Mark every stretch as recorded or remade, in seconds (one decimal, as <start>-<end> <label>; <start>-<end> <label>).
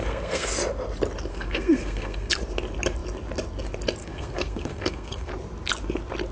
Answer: 0.0-0.5 remade; 0.5-1.3 recorded; 1.3-2.3 remade; 2.3-4.0 recorded; 4.0-5.3 remade; 5.3-6.3 recorded